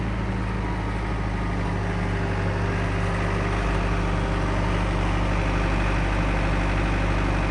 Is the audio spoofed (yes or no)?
no